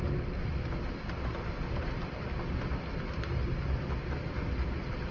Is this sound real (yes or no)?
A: yes